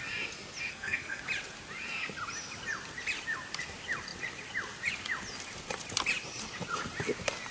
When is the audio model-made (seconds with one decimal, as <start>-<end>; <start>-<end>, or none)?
0.7-1.2